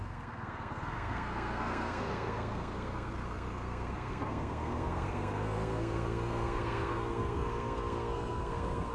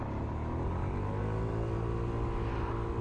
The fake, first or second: first